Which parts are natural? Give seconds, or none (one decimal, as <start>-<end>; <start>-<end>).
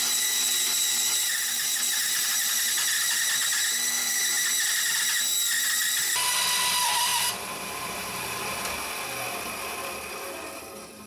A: 0.0-7.1; 8.4-11.1